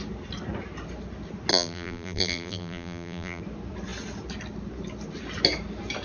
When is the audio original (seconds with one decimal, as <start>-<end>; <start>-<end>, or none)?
0.0-1.5; 3.4-6.0